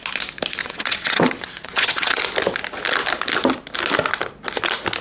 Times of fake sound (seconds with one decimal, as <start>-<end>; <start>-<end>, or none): 0.6-2.2